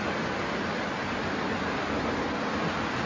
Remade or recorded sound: recorded